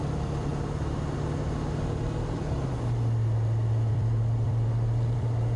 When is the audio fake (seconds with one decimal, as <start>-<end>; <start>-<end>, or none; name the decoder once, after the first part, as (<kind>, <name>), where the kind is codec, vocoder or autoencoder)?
0.0-0.5 (vocoder, BigVGAN v2); 3.9-5.6